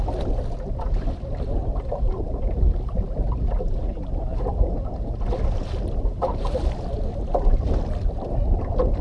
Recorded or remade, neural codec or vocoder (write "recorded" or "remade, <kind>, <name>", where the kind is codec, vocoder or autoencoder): recorded